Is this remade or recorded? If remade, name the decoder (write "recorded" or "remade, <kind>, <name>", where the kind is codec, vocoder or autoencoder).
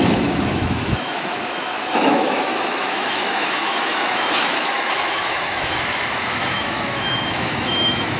remade, autoencoder, DAC-VAE